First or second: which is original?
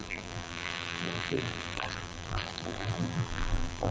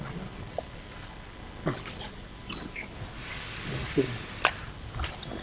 second